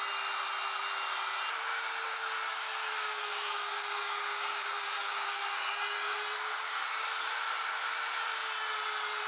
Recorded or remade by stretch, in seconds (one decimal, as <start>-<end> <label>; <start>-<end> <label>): 0.0-2.5 recorded; 2.5-6.2 remade; 6.2-9.3 recorded